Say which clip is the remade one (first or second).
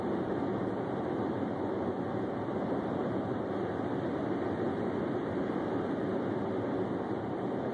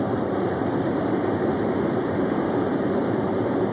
second